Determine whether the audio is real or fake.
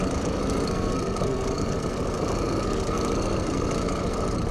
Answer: fake